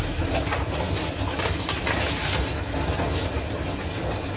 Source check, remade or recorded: recorded